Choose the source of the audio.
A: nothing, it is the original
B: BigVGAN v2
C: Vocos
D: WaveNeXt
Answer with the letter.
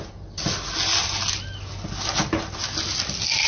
A